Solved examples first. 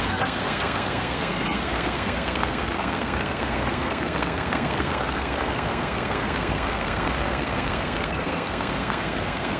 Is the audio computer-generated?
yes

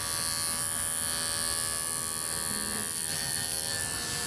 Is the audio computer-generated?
no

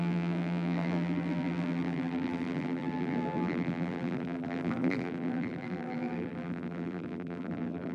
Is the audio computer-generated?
yes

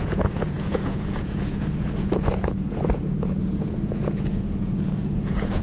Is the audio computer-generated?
yes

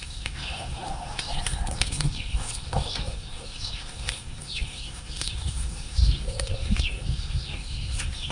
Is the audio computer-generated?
yes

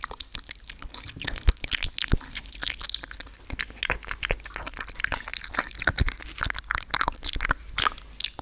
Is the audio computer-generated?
no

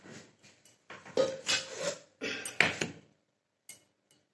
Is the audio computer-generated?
no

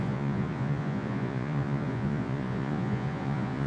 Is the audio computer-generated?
yes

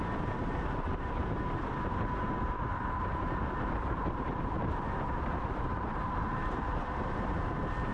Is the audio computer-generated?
yes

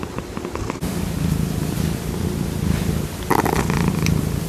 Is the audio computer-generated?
no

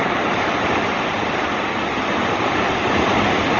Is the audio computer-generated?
yes